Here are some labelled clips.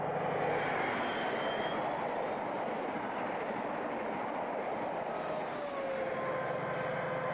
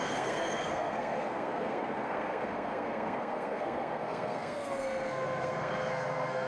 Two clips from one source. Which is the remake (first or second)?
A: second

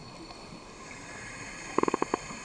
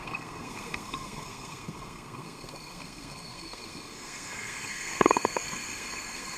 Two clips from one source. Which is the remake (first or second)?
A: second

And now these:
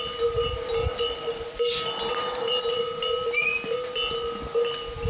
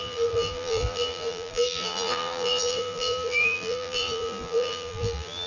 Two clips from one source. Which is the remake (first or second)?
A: second